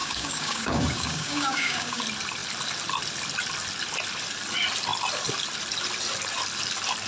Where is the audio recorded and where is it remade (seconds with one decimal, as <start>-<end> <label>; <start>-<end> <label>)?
0.0-2.0 remade; 2.0-7.1 recorded